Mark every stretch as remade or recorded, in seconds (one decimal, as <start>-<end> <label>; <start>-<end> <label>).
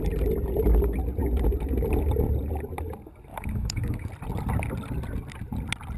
0.0-3.3 recorded; 3.3-4.1 remade; 4.1-6.0 recorded